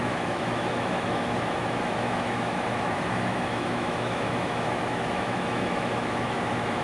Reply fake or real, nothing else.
fake